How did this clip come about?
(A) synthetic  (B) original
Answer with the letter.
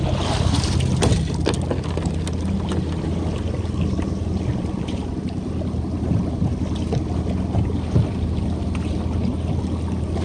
B